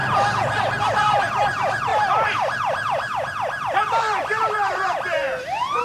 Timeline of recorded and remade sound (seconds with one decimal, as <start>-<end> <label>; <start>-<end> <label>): 0.0-1.9 recorded; 1.9-5.8 remade